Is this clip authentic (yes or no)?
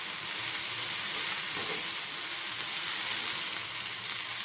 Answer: yes